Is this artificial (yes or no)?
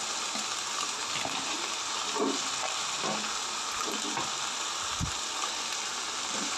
no